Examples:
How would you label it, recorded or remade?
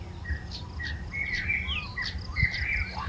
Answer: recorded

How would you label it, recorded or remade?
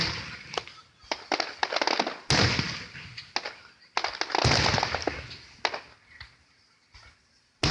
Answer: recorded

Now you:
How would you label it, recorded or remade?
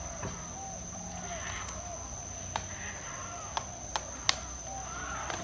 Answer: recorded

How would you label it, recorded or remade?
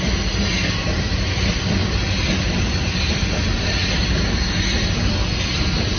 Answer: recorded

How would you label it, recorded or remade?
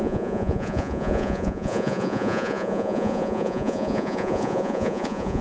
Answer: remade